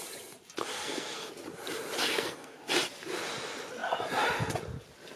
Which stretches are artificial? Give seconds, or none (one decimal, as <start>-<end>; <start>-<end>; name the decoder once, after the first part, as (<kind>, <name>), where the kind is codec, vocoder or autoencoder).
0.7-1.3 (codec, SNAC); 2.0-2.6